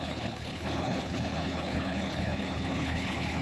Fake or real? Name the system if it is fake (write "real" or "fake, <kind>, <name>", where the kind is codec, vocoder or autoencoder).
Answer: fake, codec, HILCodec